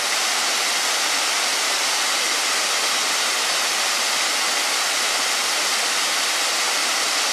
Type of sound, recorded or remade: recorded